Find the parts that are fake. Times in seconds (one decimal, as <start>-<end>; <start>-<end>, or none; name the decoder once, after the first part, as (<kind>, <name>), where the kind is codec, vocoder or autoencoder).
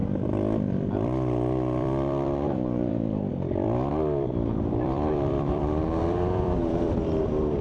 0.0-7.6 (vocoder, BigVGAN v2)